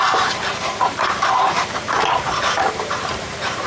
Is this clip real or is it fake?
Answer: fake